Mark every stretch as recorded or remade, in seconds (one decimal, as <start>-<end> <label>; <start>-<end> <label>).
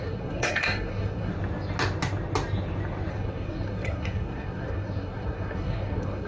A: 0.0-1.3 remade; 1.3-3.1 recorded; 3.1-6.3 remade